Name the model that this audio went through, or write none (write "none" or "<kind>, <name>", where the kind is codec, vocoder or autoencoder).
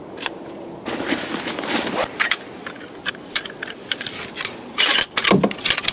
none